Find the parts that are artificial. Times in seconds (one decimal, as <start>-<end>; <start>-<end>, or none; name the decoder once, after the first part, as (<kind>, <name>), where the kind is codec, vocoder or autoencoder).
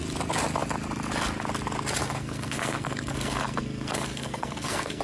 2.0-5.0 (codec, SNAC)